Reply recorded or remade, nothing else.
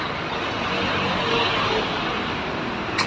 recorded